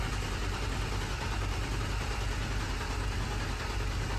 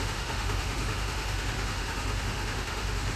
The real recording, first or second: first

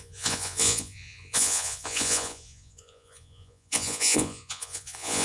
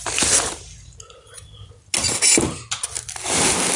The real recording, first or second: second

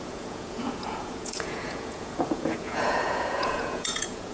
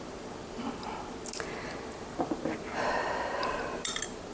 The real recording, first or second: second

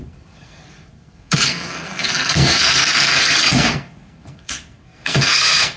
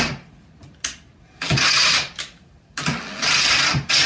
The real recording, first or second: second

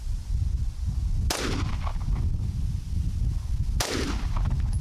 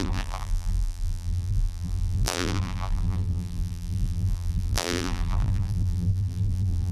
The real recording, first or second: first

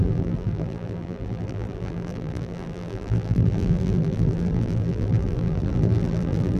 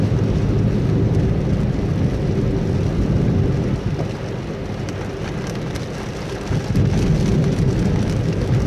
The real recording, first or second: second